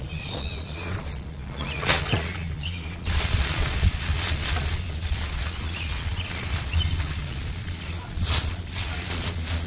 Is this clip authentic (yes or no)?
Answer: no